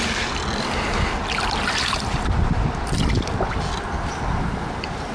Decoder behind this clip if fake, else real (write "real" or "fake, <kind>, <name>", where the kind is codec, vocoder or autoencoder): real